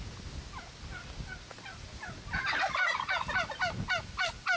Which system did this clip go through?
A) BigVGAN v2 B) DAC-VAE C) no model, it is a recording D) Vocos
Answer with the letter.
C